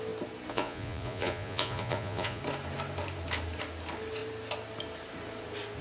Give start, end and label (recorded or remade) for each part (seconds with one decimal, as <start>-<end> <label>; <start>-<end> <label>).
0.0-0.5 recorded; 0.5-2.4 remade; 2.4-5.8 recorded